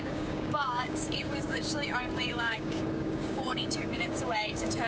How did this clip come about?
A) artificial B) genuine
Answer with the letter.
A